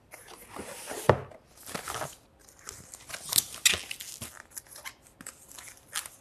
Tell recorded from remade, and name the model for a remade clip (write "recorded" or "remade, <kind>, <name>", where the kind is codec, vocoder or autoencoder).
recorded